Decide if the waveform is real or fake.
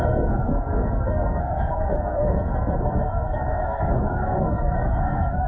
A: fake